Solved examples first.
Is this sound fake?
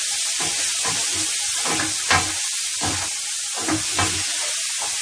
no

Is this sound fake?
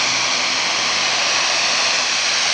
yes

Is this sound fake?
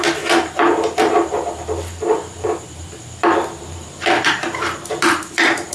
yes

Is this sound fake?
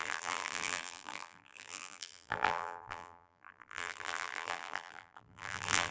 yes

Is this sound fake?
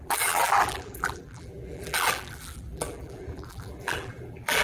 yes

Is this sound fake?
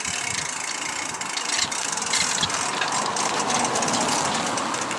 no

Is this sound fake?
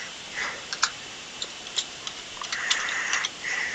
yes